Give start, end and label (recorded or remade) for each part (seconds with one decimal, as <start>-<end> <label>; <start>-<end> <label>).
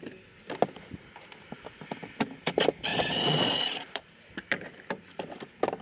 0.0-2.9 recorded; 2.9-4.0 remade; 4.0-5.8 recorded